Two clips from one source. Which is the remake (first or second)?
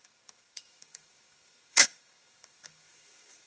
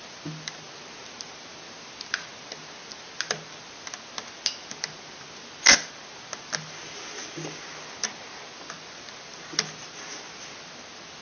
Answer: first